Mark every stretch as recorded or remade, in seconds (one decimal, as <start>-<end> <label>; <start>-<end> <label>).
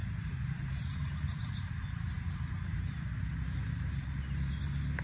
0.0-1.7 remade; 1.7-5.0 recorded